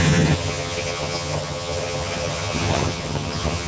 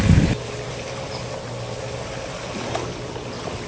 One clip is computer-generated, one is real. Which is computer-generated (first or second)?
first